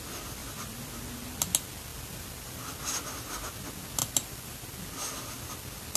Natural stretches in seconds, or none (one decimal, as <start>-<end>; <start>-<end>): 0.0-0.4; 1.1-1.9; 2.5-4.0; 5.5-6.0

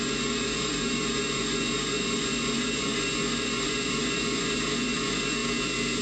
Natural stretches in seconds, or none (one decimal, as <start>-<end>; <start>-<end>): 5.4-6.0